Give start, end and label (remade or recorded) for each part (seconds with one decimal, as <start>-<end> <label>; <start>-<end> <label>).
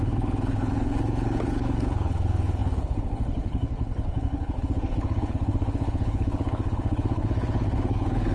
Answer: 0.0-8.3 remade